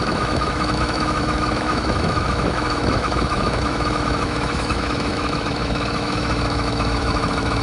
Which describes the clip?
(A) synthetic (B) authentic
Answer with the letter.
A